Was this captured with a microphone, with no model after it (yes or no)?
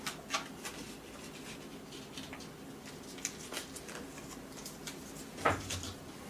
yes